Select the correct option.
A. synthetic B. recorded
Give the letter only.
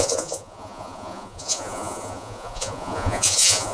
A